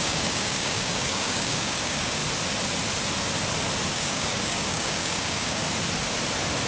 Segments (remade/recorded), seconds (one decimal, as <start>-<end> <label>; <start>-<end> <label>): 0.0-2.2 remade; 2.2-3.9 recorded; 3.9-5.6 remade; 5.6-6.7 recorded